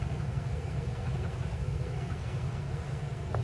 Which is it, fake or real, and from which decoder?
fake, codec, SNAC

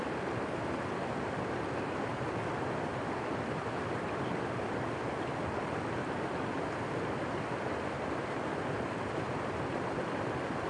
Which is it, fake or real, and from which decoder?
real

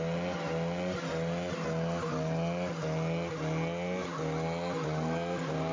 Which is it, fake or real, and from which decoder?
real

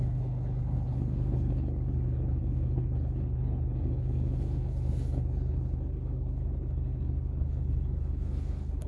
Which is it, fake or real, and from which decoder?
fake, codec, HILCodec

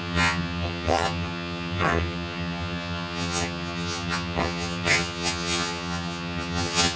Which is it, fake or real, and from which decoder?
fake, vocoder, HiFi-GAN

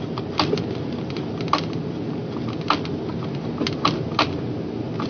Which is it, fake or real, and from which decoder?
real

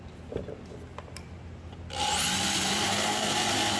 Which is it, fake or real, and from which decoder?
real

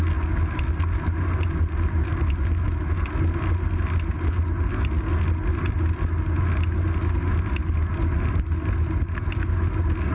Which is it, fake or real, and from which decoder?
real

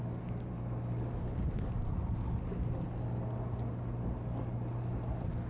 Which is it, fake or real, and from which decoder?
real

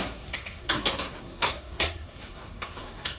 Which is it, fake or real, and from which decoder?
fake, codec, SNAC